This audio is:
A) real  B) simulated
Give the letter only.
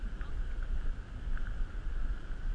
A